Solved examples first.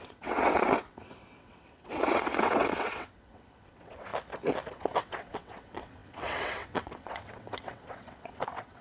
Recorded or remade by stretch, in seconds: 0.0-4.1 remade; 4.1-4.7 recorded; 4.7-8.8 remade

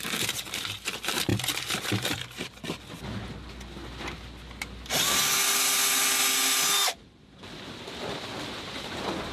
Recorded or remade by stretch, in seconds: 0.0-9.3 recorded

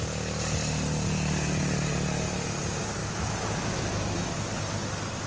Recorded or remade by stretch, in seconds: 0.0-3.0 recorded; 3.0-4.3 remade; 4.3-5.3 recorded

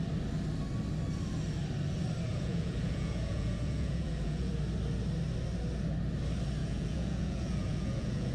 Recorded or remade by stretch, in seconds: 0.0-2.3 recorded; 2.3-4.5 remade; 4.5-6.6 recorded; 6.6-8.3 remade

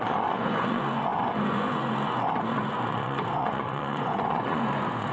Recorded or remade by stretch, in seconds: 0.0-5.1 remade